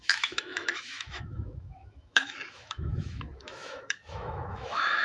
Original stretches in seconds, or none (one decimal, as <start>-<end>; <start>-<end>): none